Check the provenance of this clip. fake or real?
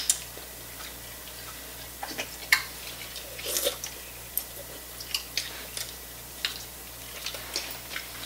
real